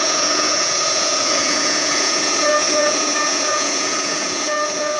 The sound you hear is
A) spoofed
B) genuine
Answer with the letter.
A